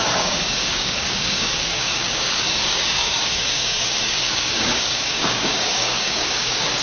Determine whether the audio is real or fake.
fake